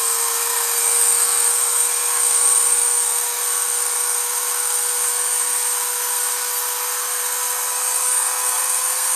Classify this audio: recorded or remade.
remade